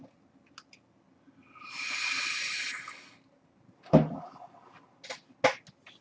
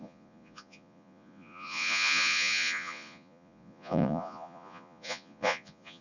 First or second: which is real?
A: first